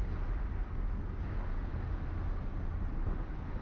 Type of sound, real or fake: real